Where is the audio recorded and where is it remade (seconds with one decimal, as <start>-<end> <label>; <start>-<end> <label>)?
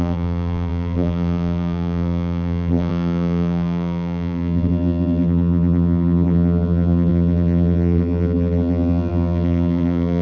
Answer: 0.0-10.2 remade